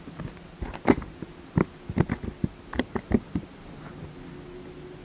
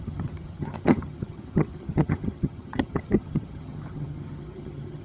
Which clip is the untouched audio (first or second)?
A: first